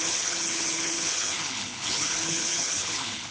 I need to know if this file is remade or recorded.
remade